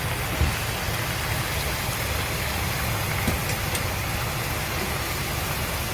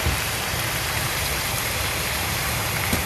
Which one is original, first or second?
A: first